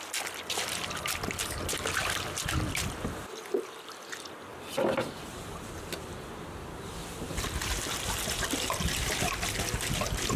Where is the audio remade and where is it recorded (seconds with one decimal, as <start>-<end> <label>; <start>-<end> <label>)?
0.0-2.0 recorded; 2.0-3.8 remade; 3.8-4.5 recorded; 4.5-9.3 remade; 9.3-10.4 recorded